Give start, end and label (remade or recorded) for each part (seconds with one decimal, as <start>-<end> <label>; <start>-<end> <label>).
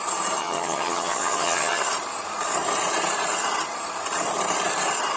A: 0.0-0.4 recorded; 0.4-1.8 remade; 1.8-5.2 recorded